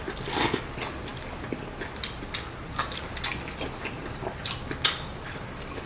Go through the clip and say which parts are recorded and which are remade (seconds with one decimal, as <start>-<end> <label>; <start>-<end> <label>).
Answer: 0.0-5.1 recorded; 5.1-5.9 remade